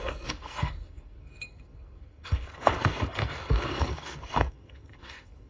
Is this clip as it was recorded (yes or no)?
no